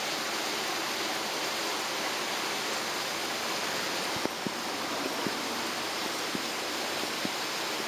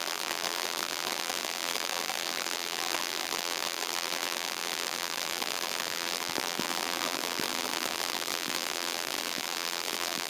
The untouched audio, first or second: first